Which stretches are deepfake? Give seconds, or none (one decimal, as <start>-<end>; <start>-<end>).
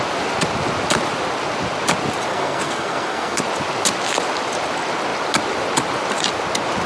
2.3-3.4